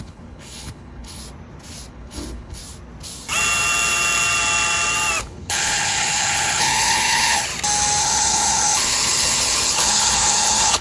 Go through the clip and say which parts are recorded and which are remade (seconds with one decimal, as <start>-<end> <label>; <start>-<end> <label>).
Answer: 0.0-1.2 remade; 1.2-1.9 recorded; 1.9-2.6 remade; 2.6-5.2 recorded; 5.2-7.5 remade; 7.5-8.0 recorded; 8.0-10.8 remade